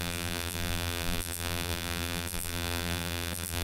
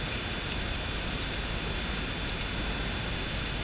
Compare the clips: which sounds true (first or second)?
second